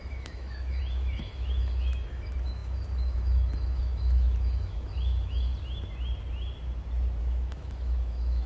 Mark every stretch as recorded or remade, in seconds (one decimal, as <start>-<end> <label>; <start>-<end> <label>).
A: 0.0-5.5 remade; 5.5-7.2 recorded; 7.2-8.5 remade